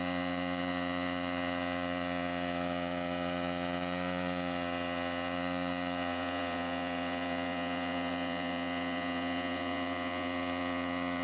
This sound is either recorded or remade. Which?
remade